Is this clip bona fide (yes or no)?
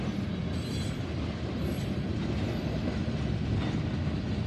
yes